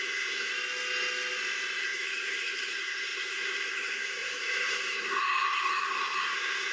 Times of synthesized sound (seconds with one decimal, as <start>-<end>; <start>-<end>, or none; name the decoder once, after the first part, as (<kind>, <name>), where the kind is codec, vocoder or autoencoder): 0.0-0.5 (codec, SNAC); 1.8-6.7